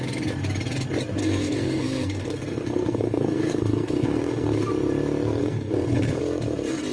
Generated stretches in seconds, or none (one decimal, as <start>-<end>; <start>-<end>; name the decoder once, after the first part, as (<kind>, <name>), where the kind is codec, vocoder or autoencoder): 1.2-4.7 (codec, SNAC); 5.4-6.2